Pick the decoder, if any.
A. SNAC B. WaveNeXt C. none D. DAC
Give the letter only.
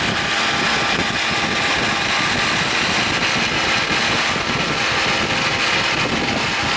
C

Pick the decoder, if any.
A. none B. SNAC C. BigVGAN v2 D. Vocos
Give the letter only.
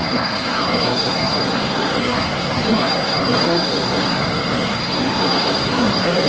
B